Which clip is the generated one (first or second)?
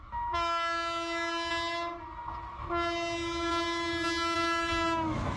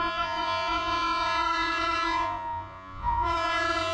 second